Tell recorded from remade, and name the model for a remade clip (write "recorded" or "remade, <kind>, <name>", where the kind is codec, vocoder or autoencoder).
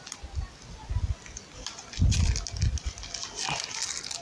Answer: recorded